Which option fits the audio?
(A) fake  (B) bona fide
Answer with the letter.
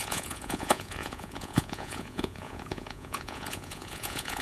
A